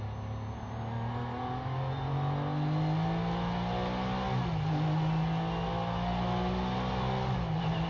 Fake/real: real